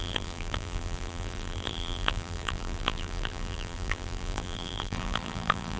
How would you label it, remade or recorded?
remade